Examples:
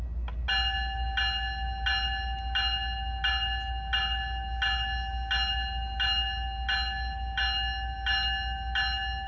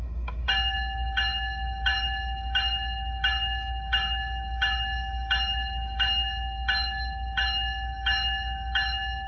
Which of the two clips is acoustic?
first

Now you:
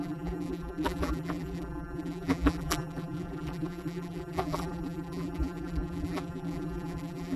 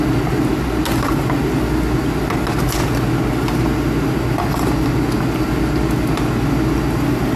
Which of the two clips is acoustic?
second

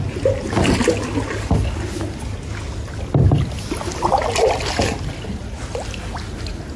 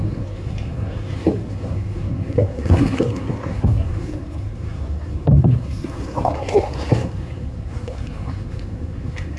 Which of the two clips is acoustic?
first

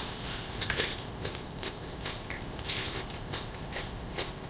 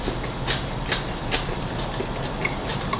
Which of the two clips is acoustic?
second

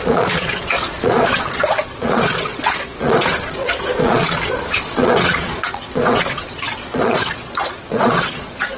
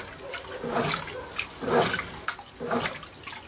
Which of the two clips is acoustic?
second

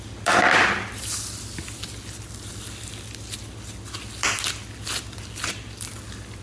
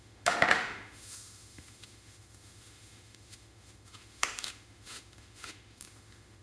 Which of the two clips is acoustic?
first